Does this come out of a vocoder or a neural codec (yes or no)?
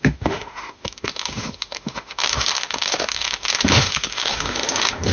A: yes